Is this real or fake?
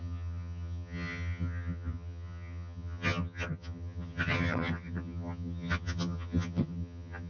fake